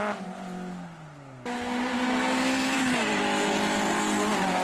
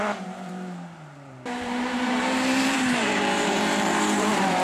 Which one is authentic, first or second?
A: first